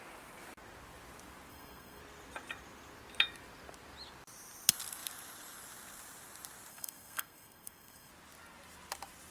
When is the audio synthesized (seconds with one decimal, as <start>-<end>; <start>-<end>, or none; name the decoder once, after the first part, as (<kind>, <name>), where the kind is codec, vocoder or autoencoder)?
1.5-2.0 (codec, SNAC); 6.7-8.1